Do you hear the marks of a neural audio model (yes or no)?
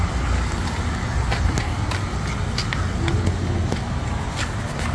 no